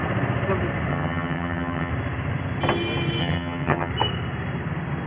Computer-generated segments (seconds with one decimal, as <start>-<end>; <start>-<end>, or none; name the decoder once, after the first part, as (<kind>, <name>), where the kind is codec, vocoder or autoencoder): 0.9-1.9 (vocoder, HiFi-GAN); 3.2-3.9